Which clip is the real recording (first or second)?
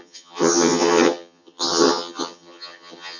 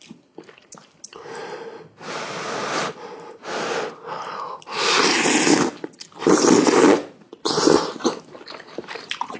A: second